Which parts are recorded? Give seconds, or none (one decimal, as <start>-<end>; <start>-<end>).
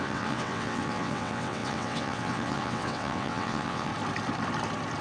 3.9-5.0